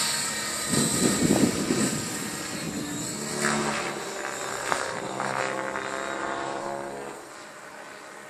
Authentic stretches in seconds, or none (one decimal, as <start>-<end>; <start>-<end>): 0.0-4.5; 5.4-6.6; 7.3-8.3